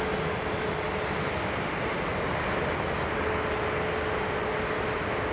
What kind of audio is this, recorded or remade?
recorded